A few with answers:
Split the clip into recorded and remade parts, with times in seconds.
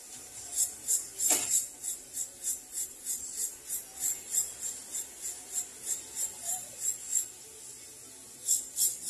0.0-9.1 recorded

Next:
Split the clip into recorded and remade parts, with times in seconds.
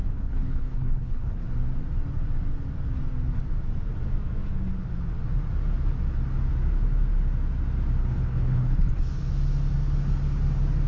0.0-1.4 remade; 1.4-8.0 recorded; 8.0-8.9 remade; 8.9-10.9 recorded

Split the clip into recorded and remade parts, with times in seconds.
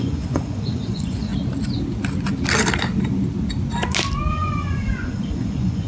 0.0-1.3 remade; 1.3-4.3 recorded; 4.3-5.9 remade